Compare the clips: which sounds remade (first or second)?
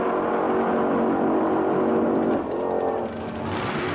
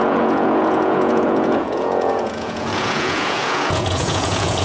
second